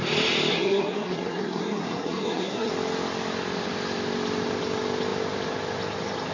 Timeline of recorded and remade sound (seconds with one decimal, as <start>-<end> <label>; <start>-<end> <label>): 0.0-0.5 recorded; 0.5-2.7 remade; 2.7-6.3 recorded

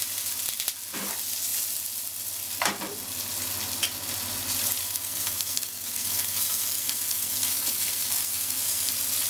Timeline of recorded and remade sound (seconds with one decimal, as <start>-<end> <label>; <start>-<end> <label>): 0.0-4.8 recorded; 4.8-8.9 remade; 8.9-9.3 recorded

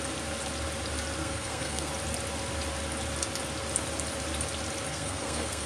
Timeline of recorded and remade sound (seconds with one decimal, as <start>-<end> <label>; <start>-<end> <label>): 0.0-1.2 recorded; 1.2-1.9 remade; 1.9-4.9 recorded; 4.9-5.7 remade